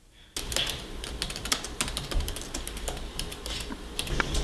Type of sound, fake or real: real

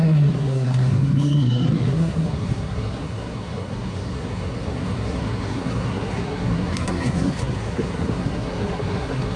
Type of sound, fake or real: fake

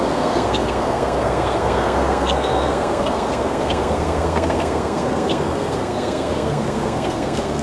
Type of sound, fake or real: fake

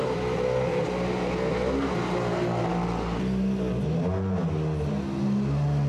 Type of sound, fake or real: real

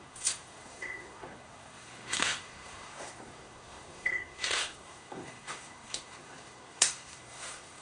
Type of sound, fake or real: fake